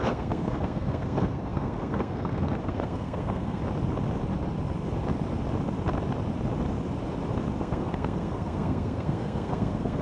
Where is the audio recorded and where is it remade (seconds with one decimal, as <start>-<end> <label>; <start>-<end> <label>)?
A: 0.0-3.6 remade; 3.6-7.6 recorded; 7.6-10.0 remade